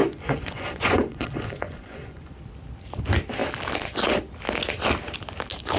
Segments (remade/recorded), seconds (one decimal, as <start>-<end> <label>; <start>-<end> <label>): 0.0-2.3 remade; 2.3-5.8 recorded